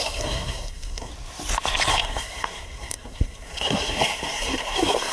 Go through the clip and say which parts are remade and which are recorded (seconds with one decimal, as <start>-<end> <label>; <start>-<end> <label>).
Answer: 0.0-1.1 remade; 1.1-1.9 recorded; 1.9-5.1 remade